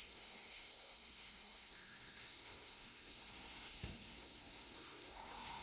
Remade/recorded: remade